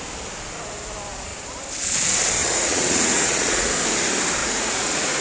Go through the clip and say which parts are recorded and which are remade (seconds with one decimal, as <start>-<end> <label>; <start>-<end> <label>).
0.0-2.4 recorded; 2.4-3.7 remade; 3.7-4.4 recorded; 4.4-5.2 remade